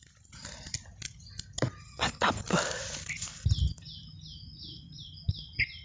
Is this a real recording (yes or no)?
yes